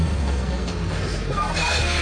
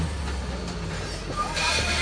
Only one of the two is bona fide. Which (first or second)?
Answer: second